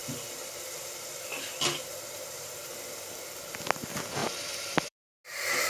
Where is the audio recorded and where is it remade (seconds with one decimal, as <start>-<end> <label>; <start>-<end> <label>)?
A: 0.0-3.4 remade; 3.4-4.2 recorded; 4.2-5.2 remade; 5.2-5.7 recorded